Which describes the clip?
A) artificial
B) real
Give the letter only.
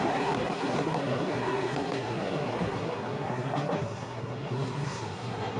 A